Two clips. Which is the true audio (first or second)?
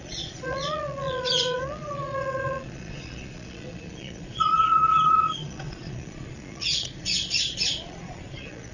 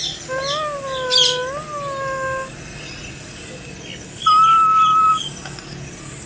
second